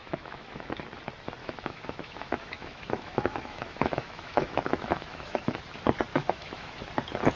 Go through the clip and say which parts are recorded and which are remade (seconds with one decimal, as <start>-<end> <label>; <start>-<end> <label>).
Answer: 0.0-0.8 remade; 0.8-1.4 recorded; 1.4-5.6 remade; 5.6-6.1 recorded; 6.1-6.8 remade; 6.8-7.4 recorded